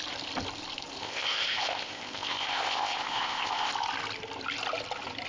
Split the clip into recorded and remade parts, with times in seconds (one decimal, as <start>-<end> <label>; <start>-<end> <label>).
0.0-1.0 recorded; 1.0-3.7 remade; 3.7-5.3 recorded